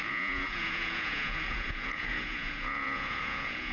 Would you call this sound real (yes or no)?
no